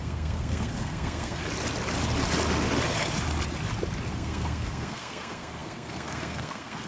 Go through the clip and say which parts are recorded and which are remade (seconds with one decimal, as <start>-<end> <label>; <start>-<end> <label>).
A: 0.0-1.4 remade; 1.4-4.1 recorded; 4.1-6.9 remade